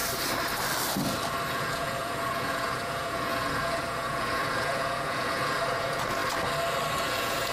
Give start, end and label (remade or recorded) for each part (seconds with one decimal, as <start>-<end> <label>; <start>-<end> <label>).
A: 0.0-1.5 recorded; 1.5-6.2 remade; 6.2-6.9 recorded; 6.9-7.5 remade